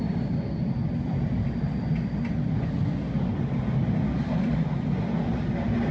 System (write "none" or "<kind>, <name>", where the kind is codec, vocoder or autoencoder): none